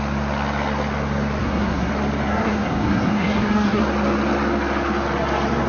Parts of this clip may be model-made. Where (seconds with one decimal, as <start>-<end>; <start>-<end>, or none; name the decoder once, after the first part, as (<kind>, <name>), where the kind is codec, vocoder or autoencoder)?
1.4-1.9 (codec, SNAC); 2.3-3.8